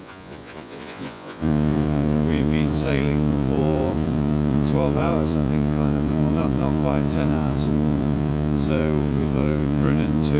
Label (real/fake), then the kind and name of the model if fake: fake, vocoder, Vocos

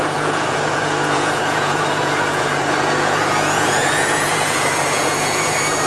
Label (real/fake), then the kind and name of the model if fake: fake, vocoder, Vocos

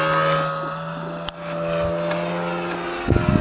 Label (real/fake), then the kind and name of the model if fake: real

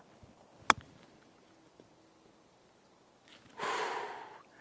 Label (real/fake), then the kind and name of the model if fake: real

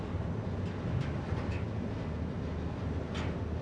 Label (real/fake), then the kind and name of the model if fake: real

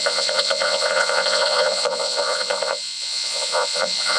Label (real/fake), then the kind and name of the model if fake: fake, vocoder, Vocos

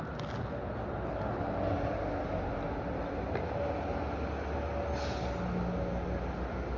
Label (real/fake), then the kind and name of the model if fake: real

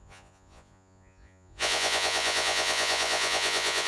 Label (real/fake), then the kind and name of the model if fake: fake, vocoder, Vocos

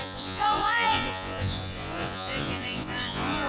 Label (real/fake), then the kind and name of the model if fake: fake, vocoder, Vocos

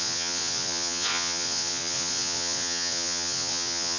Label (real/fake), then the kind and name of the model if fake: fake, vocoder, Vocos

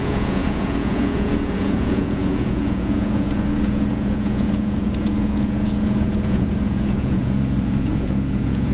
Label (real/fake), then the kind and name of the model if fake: fake, vocoder, Vocos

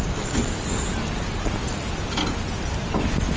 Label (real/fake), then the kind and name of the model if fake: real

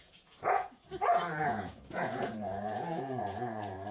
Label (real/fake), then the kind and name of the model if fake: fake, vocoder, Vocos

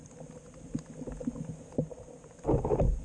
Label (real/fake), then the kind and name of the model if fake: real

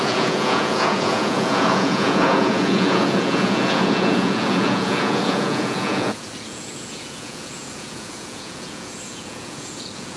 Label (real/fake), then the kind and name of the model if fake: fake, vocoder, Vocos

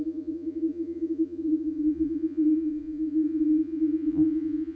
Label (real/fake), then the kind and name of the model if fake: fake, vocoder, Vocos